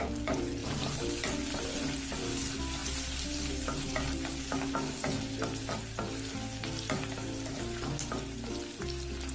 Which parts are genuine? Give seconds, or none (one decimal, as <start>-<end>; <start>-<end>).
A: 0.0-9.3